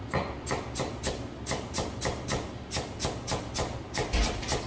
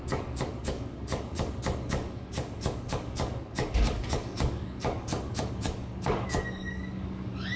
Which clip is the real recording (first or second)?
first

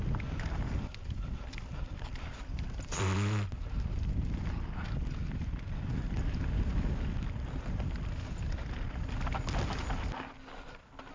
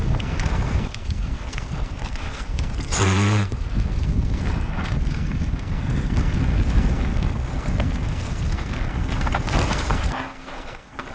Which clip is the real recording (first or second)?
first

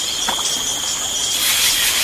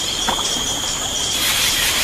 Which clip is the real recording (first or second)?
first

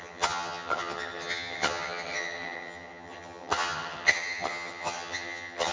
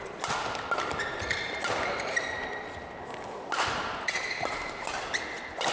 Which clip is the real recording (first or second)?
second